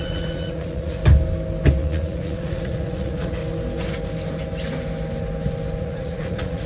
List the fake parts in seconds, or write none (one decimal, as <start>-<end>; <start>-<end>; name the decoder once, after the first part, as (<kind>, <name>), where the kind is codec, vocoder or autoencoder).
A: 0.0-1.0 (vocoder, Vocos); 1.8-3.4; 5.8-6.7